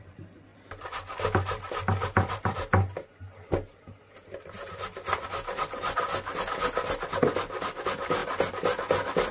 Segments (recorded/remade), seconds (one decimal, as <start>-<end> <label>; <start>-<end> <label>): 0.0-9.3 recorded